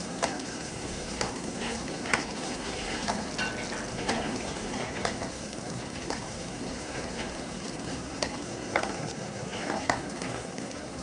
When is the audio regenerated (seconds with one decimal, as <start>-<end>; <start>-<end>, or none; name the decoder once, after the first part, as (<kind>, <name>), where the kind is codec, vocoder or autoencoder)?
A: 0.0-3.3 (codec, SNAC); 3.9-11.0